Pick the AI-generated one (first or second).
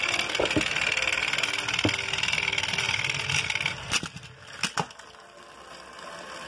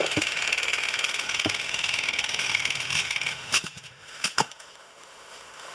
second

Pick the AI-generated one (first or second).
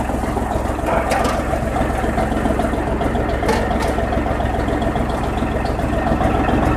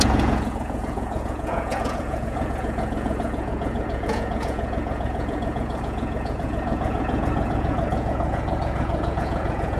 second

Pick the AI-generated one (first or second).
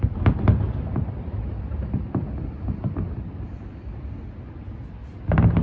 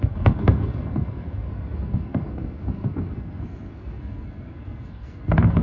second